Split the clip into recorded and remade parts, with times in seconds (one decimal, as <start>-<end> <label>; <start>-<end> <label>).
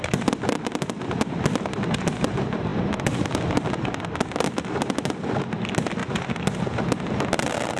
0.0-7.8 recorded